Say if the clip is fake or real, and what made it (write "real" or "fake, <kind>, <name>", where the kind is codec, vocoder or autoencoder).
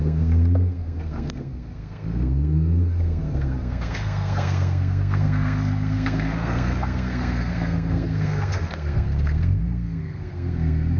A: fake, codec, SNAC